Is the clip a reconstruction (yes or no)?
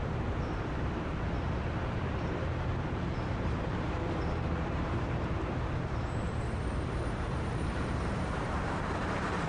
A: yes